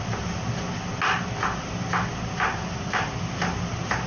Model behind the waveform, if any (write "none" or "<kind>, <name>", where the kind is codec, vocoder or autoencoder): none